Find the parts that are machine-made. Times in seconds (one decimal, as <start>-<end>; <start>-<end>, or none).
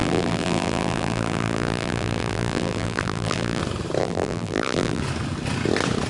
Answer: 0.0-3.6; 4.0-5.0